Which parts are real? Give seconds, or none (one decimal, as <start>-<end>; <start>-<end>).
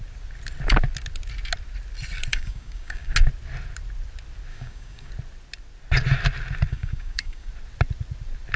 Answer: 0.0-2.3; 3.1-4.5; 5.1-6.7; 7.5-8.6